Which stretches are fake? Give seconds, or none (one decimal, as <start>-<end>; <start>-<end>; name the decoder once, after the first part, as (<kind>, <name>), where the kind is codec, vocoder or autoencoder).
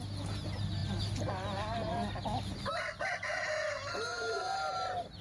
none